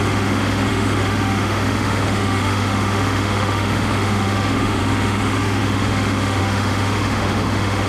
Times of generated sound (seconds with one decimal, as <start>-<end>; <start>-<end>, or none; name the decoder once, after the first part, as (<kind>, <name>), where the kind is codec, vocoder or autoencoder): 0.0-7.9 (autoencoder, DAC-VAE)